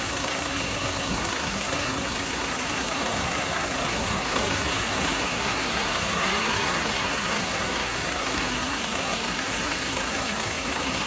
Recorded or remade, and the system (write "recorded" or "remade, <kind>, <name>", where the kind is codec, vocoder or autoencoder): remade, codec, SNAC